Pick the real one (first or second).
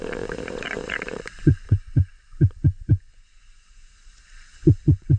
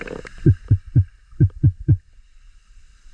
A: second